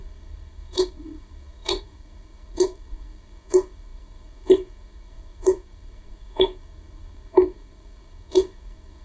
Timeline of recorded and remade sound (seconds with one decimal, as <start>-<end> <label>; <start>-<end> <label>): 0.0-9.0 remade